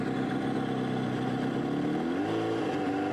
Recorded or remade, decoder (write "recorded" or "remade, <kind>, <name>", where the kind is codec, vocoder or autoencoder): recorded